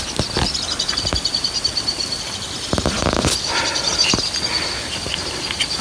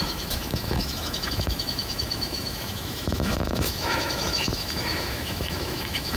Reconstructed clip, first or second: second